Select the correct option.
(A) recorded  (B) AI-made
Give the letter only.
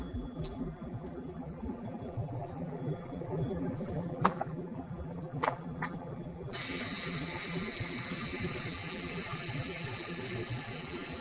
B